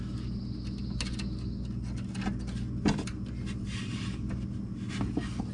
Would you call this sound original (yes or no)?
yes